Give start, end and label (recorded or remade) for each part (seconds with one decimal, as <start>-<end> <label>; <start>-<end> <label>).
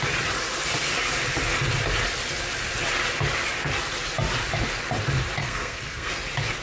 0.0-5.4 recorded; 5.4-6.1 remade; 6.1-6.6 recorded